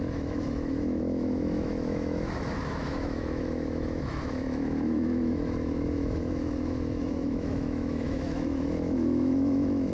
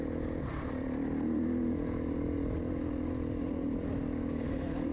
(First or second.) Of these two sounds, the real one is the second